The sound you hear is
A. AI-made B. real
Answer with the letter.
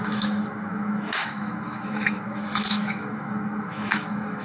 A